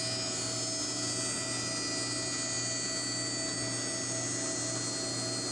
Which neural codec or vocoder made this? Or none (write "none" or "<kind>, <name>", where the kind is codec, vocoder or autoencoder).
none